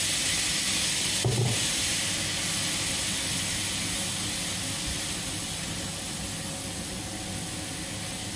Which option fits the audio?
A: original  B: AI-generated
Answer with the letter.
A